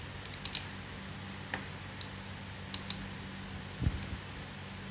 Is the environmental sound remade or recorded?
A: recorded